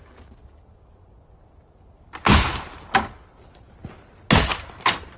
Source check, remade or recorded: recorded